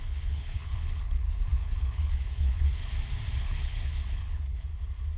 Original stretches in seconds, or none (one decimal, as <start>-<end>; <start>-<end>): 2.8-3.4; 4.7-5.2